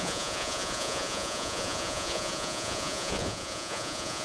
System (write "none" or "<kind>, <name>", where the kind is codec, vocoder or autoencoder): vocoder, Vocos